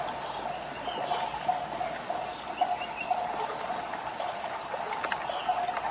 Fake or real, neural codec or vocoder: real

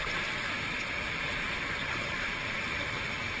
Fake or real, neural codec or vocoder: fake, vocoder, BigVGAN v2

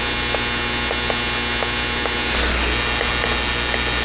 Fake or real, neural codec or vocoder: real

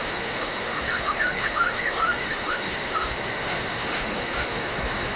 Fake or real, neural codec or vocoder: fake, autoencoder, DAC-VAE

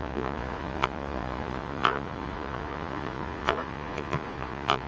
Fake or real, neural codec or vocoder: fake, vocoder, Vocos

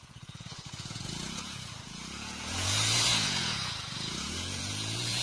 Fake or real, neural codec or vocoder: fake, vocoder, Vocos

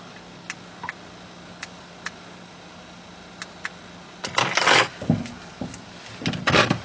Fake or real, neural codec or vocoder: real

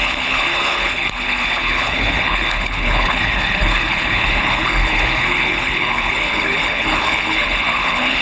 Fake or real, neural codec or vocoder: fake, codec, HILCodec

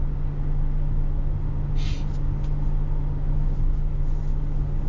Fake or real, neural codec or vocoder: real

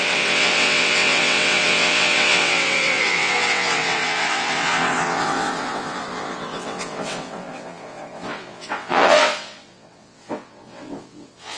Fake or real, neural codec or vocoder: fake, vocoder, WaveNeXt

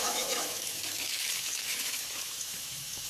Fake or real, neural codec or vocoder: fake, autoencoder, DAC-VAE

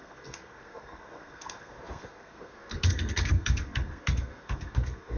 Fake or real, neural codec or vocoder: fake, codec, SNAC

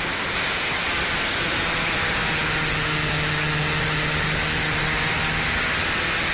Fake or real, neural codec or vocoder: real